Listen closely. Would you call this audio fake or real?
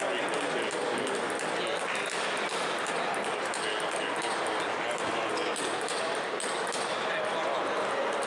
real